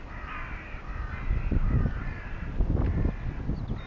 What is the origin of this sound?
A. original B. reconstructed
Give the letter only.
A